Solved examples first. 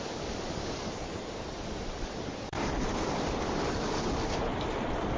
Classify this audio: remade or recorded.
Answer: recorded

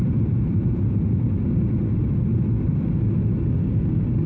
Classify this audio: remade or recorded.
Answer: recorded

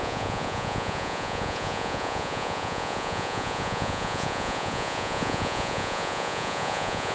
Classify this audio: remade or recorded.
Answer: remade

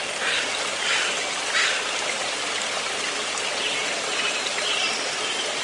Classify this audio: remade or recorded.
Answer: recorded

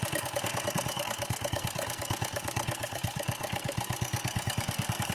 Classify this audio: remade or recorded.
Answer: remade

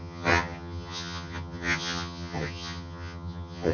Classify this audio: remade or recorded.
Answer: remade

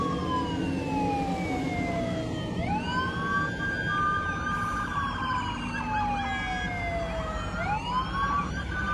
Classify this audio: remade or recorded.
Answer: recorded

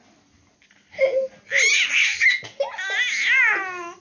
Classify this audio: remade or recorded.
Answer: recorded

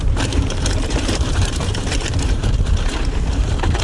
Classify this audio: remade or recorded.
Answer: remade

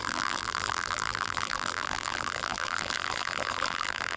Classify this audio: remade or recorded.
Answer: remade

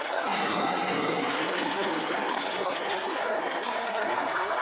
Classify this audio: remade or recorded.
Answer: remade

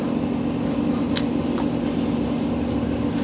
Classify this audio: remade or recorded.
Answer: recorded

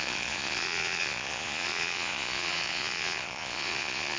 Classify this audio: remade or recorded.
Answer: remade